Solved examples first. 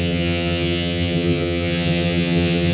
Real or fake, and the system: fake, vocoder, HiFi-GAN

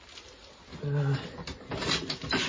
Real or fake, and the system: real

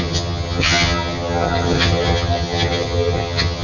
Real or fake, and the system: fake, vocoder, HiFi-GAN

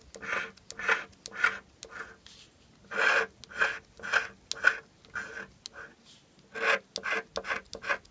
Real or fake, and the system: real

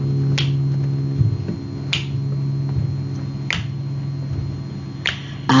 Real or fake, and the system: real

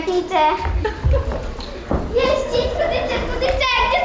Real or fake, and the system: real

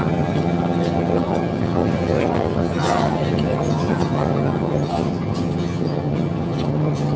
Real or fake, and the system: fake, vocoder, HiFi-GAN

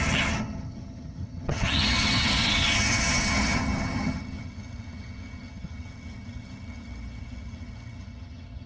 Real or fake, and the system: fake, vocoder, HiFi-GAN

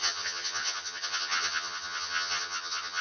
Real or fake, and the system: fake, vocoder, HiFi-GAN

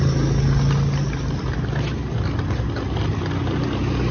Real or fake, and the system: real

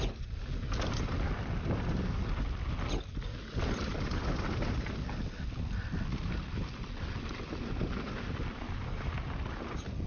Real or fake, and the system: real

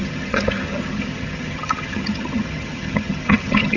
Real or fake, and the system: fake, vocoder, HiFi-GAN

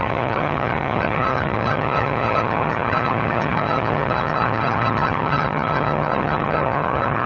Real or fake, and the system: fake, vocoder, HiFi-GAN